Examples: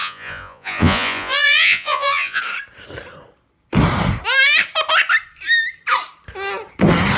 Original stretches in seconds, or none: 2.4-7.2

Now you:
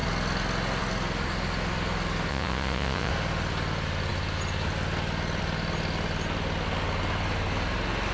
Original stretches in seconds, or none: 0.0-2.3; 3.1-8.1

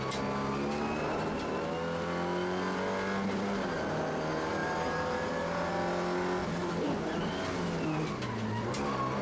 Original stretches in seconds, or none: 0.0-4.6; 5.7-6.4; 7.3-9.2

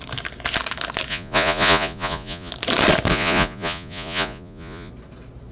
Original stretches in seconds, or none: 0.0-1.1; 2.5-3.1; 4.9-5.5

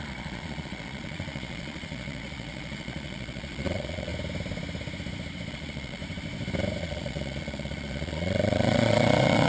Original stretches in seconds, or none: 4.1-5.5; 6.0-6.8